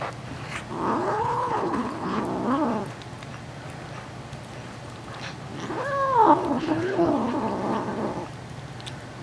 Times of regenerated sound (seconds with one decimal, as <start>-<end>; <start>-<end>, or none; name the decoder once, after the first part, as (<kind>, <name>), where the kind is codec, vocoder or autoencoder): 1.0-2.2 (codec, HILCodec); 6.5-7.1